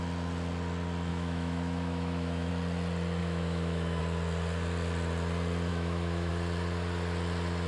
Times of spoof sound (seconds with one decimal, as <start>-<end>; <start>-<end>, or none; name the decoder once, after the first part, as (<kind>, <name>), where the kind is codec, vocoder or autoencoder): 1.1-2.5 (autoencoder, DAC-VAE); 3.2-4.0; 5.7-6.3